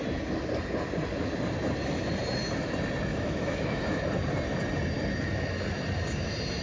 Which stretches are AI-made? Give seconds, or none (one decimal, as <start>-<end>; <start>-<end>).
3.1-3.8